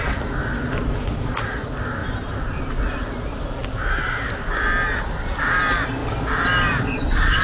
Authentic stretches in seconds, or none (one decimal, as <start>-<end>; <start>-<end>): 0.0-7.4